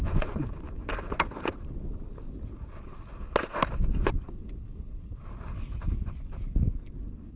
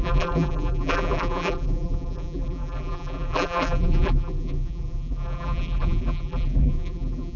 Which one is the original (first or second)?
first